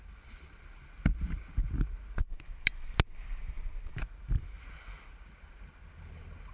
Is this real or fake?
real